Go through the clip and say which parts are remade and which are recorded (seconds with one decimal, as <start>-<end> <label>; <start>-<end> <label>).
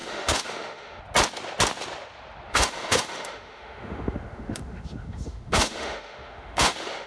0.0-1.0 remade; 1.0-2.5 recorded; 2.5-7.1 remade